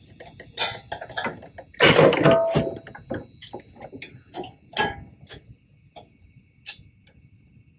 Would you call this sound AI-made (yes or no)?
no